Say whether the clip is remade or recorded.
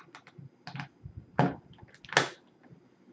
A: recorded